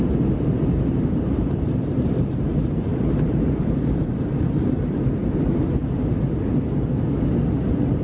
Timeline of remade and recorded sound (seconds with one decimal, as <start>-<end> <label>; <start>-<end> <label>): 0.0-5.8 remade; 5.8-7.6 recorded; 7.6-8.0 remade